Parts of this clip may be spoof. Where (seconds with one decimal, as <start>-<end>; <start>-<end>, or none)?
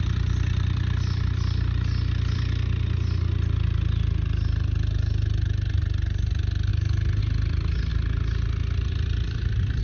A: none